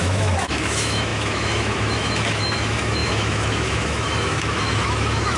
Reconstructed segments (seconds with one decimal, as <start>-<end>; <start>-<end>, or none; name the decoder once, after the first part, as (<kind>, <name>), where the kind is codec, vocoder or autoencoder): 0.0-5.4 (autoencoder, DAC-VAE)

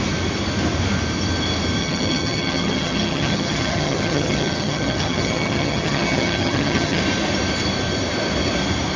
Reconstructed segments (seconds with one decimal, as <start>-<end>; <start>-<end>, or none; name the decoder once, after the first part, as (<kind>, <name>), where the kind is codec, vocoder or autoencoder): 1.8-7.0 (vocoder, HiFi-GAN)

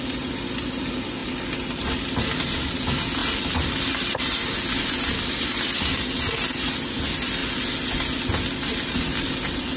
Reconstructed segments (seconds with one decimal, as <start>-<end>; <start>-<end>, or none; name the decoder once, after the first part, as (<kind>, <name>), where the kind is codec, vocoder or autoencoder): none